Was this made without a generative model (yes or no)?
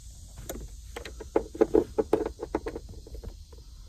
yes